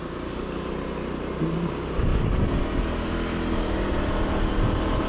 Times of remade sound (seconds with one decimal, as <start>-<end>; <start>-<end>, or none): none